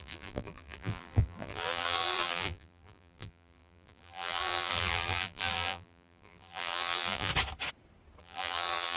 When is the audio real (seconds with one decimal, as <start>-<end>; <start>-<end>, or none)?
7.3-8.2